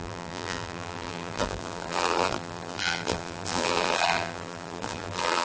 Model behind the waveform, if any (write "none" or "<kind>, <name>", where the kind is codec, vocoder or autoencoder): vocoder, BigVGAN v2